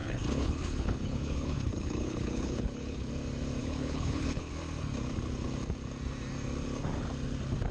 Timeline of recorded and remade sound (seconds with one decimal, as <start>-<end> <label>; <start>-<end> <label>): 0.0-3.1 remade; 3.1-3.6 recorded; 3.6-4.5 remade; 4.5-7.7 recorded